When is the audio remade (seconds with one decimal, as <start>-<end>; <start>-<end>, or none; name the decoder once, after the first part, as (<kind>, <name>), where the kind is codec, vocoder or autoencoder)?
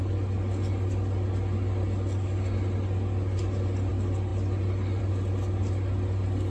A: none